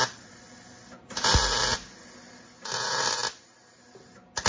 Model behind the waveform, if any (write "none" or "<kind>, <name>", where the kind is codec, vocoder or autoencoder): none